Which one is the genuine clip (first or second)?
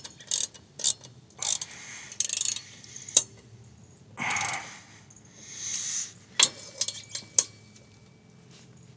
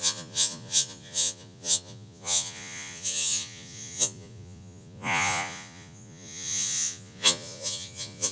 first